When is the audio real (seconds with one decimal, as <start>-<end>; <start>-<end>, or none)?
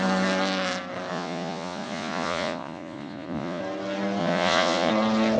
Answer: 0.0-1.1; 3.6-4.2; 4.9-5.4